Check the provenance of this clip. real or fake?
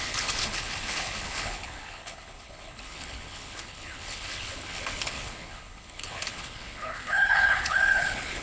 fake